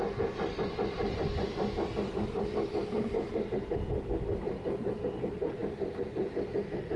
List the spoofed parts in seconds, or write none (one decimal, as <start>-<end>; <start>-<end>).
none